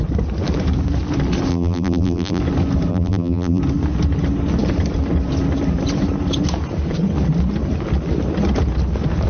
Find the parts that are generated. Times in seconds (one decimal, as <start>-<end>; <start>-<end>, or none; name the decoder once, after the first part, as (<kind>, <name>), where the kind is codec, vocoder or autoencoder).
1.5-2.4 (vocoder, BigVGAN v2); 2.9-3.6